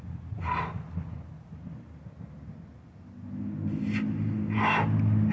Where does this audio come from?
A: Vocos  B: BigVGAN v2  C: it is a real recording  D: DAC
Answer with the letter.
C